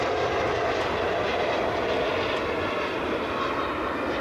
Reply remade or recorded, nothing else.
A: recorded